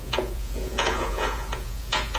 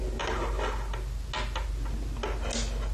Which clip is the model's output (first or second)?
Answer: first